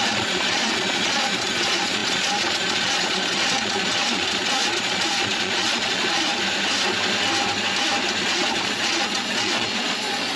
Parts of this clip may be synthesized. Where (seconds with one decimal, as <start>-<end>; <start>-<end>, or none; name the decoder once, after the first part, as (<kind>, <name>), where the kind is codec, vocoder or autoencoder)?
0.0-6.3 (vocoder, Vocos); 8.2-10.4

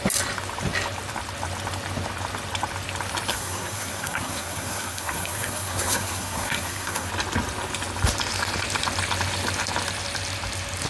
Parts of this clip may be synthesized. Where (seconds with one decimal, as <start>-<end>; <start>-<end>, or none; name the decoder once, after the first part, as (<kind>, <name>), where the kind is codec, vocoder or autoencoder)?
3.3-7.1 (codec, SNAC)

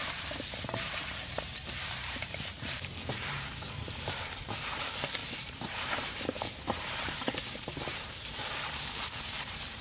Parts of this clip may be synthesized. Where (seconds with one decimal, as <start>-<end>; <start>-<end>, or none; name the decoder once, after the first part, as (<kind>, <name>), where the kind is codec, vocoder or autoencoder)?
0.0-9.8 (vocoder, BigVGAN v2)

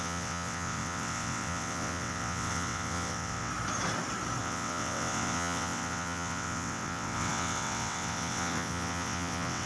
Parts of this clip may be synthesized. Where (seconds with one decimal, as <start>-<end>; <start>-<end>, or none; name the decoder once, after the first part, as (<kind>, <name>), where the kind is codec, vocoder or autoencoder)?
0.0-3.5 (vocoder, WaveNeXt); 4.4-9.7

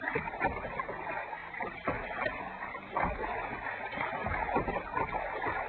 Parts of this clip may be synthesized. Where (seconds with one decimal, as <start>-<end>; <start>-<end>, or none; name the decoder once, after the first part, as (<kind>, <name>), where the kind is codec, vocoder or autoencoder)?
none

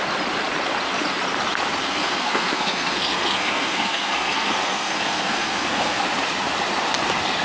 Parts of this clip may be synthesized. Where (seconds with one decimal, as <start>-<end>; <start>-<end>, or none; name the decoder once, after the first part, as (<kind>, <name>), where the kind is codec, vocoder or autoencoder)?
1.8-6.0 (codec, SNAC)

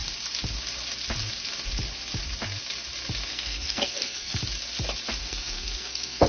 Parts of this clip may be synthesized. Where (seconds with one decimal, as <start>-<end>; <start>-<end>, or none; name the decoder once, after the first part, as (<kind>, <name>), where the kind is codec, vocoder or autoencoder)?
3.3-4.4 (codec, SNAC); 5.2-6.3

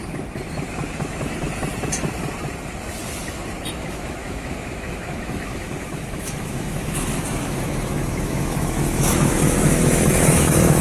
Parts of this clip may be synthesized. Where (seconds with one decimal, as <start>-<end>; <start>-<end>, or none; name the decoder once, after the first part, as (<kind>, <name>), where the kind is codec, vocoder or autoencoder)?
3.6-10.8 (autoencoder, DAC-VAE)